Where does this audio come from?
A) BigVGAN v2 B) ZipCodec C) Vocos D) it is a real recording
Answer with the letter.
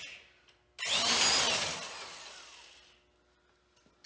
D